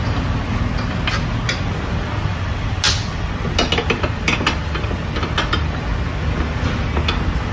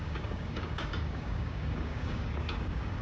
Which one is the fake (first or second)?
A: second